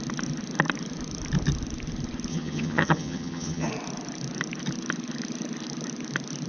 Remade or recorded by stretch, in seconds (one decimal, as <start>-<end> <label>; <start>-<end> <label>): 0.0-2.3 recorded; 2.3-3.7 remade; 3.7-6.5 recorded